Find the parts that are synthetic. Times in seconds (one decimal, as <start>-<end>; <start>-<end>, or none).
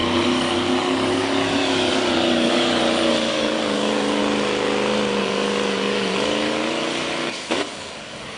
0.0-2.8; 3.3-4.2; 5.2-8.4